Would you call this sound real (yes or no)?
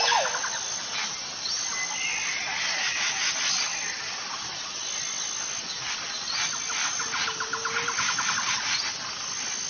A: yes